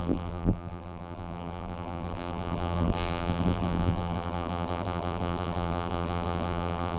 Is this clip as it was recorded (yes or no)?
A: no